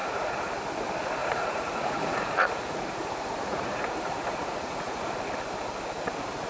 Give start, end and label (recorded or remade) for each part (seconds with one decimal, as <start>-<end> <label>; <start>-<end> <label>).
0.0-0.5 remade; 0.5-1.2 recorded; 1.2-5.1 remade; 5.1-6.5 recorded